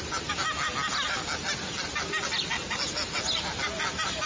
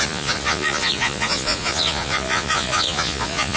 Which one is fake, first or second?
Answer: second